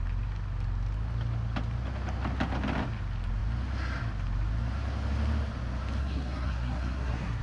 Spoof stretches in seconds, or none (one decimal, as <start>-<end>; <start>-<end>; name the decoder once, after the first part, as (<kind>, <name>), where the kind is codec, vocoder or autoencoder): 6.0-7.4 (codec, SNAC)